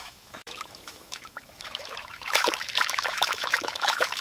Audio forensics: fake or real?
fake